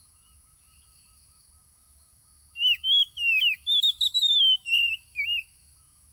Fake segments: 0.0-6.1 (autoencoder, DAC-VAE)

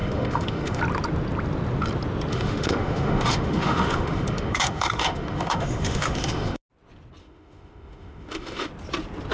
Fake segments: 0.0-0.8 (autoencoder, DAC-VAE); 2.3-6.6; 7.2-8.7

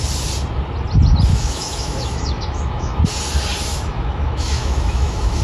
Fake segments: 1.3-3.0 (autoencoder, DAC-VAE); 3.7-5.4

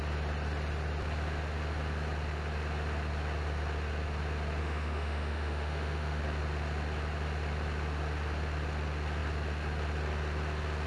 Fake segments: 4.6-6.2 (autoencoder, DAC-VAE)

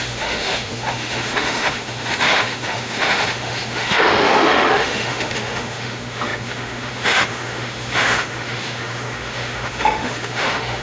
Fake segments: 0.0-10.8 (autoencoder, DAC-VAE)

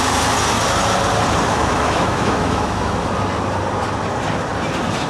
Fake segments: 1.5-3.1 (autoencoder, DAC-VAE)

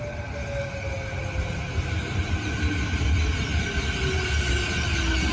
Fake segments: none

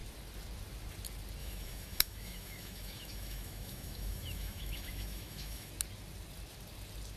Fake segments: 1.4-5.7 (autoencoder, DAC-VAE)